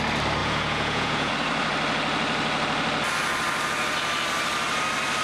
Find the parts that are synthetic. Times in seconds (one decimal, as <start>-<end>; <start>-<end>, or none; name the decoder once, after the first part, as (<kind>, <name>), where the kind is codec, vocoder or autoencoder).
0.4-1.3 (vocoder, Vocos)